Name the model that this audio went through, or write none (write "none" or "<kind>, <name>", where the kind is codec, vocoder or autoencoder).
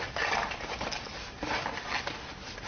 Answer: none